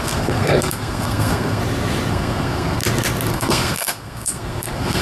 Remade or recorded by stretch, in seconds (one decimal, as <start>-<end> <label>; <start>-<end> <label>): 0.0-1.6 remade; 1.6-2.1 recorded; 2.1-2.8 remade; 2.8-3.3 recorded; 3.3-5.0 remade